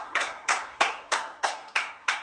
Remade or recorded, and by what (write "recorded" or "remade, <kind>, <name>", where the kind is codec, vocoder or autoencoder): remade, codec, SNAC